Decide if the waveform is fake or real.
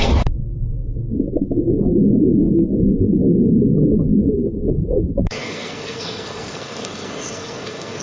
fake